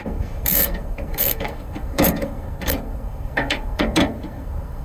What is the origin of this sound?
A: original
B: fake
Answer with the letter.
B